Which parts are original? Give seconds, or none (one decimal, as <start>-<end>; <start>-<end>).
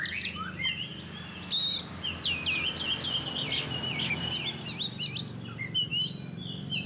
0.0-5.9; 6.4-6.9